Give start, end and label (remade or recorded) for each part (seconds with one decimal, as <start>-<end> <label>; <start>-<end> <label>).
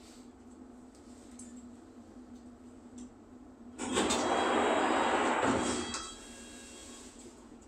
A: 0.0-6.8 recorded; 6.8-7.7 remade